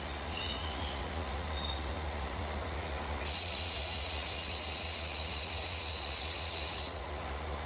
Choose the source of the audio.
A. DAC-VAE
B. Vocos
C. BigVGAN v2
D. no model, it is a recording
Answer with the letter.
B